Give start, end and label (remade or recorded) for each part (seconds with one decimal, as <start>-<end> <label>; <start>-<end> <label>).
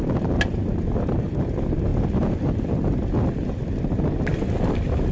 0.0-5.1 recorded